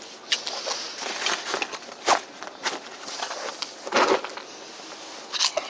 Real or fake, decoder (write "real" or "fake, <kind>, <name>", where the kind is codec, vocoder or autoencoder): real